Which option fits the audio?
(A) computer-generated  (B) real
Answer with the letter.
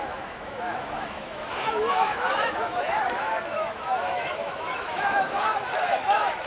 A